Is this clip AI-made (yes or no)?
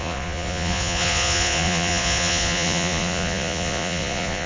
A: yes